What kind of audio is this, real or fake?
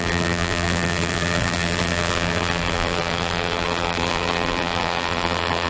fake